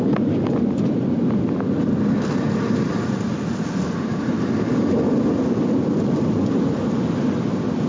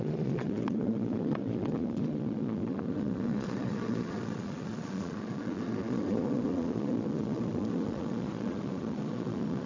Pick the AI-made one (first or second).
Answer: second